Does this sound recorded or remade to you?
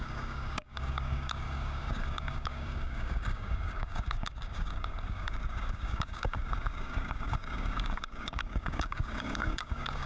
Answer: remade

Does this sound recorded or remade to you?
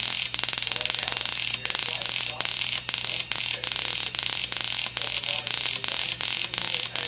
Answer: recorded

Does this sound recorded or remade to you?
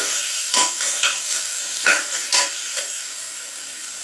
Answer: remade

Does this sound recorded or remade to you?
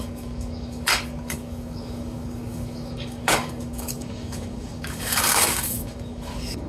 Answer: remade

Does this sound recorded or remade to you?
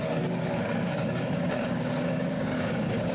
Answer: remade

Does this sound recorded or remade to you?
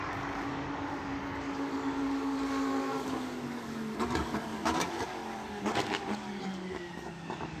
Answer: remade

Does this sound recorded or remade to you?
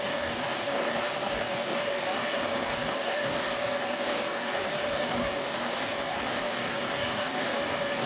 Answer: remade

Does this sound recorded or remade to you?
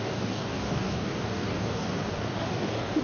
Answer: remade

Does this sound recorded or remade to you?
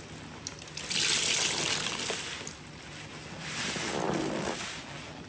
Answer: recorded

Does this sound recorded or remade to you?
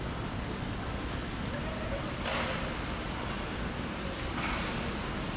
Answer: recorded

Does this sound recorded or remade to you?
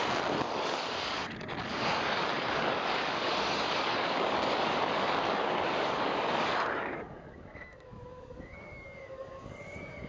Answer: remade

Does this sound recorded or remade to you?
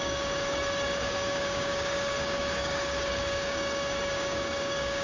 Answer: remade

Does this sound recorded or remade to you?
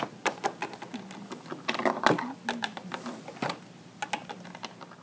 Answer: recorded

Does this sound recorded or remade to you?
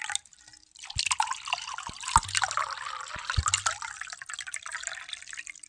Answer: recorded